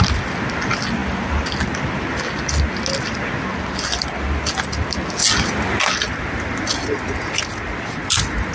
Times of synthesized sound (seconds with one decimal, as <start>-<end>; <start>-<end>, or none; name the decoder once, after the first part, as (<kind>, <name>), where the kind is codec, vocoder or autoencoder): none